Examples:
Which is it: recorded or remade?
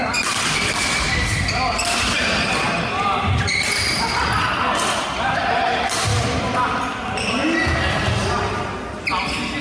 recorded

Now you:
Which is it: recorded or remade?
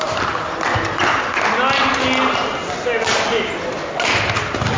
recorded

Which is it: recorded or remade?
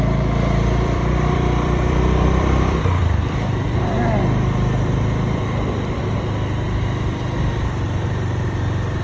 remade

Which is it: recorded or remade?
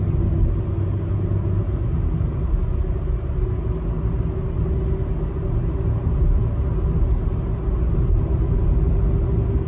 recorded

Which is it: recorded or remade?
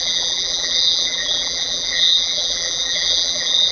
remade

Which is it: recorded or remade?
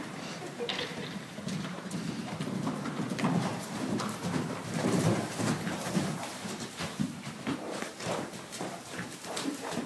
remade